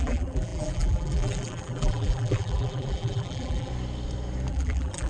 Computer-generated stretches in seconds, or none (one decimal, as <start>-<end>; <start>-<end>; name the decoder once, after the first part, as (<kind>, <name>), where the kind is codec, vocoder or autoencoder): 0.0-3.7 (vocoder, BigVGAN v2); 4.5-5.1